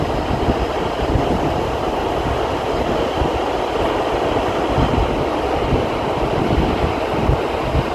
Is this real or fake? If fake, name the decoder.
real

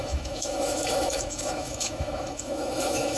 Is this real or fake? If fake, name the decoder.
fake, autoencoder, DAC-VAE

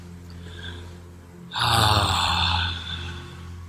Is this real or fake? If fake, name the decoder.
real